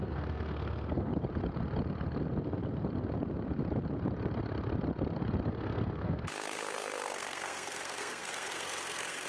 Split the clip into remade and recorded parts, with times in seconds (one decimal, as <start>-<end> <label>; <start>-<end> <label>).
0.0-1.1 remade; 1.1-5.5 recorded; 5.5-9.3 remade